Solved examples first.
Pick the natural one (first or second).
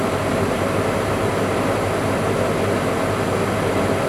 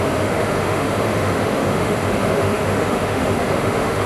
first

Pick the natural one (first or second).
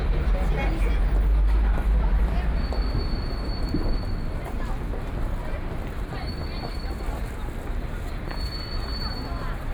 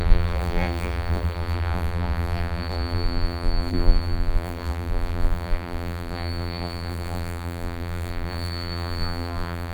first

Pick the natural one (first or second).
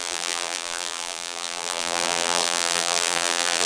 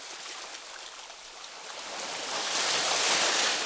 second